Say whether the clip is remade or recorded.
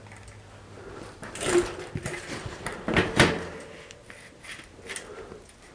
recorded